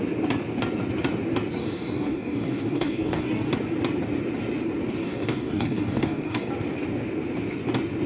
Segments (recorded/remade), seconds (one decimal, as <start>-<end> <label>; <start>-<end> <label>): 0.0-1.6 recorded; 1.6-3.5 remade; 3.5-5.0 recorded; 5.0-6.5 remade; 6.5-8.1 recorded